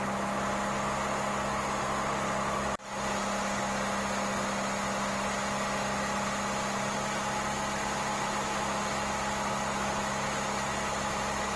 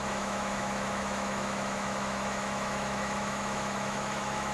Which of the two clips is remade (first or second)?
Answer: second